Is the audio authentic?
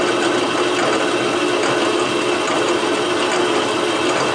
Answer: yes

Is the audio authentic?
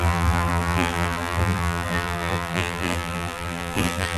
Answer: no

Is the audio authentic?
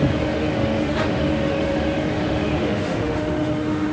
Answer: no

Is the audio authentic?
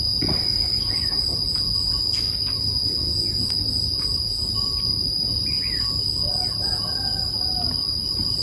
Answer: yes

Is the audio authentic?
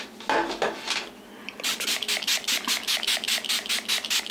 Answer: yes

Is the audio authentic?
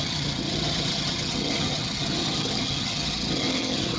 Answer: no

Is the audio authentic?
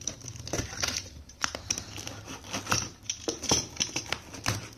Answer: yes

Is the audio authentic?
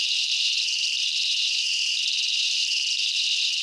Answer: no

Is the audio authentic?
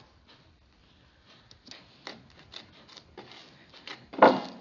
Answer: yes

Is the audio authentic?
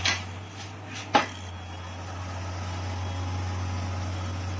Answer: yes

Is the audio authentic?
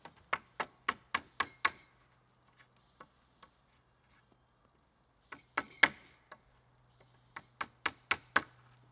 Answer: yes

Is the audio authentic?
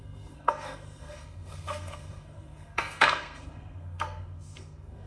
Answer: no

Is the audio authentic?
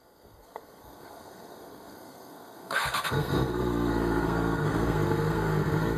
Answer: no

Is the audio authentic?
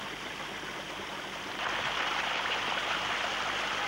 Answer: yes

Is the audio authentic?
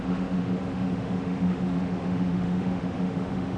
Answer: no